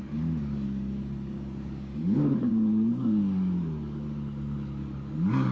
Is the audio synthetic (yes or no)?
yes